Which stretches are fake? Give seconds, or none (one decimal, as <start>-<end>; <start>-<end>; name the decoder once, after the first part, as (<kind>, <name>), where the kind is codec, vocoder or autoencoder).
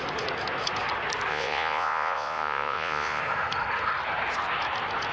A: 1.3-3.2 (vocoder, Vocos)